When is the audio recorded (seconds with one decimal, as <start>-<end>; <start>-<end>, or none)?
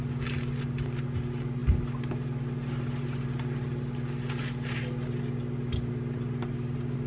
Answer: 0.0-7.1